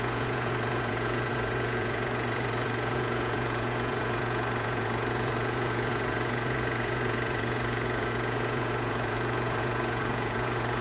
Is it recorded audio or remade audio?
remade